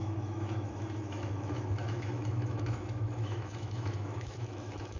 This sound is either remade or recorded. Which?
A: remade